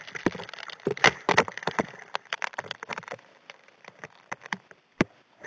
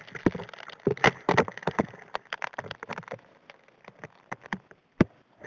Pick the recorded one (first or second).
second